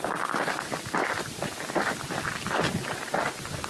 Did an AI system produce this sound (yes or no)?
no